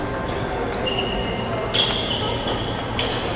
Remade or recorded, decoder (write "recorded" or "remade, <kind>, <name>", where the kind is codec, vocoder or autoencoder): recorded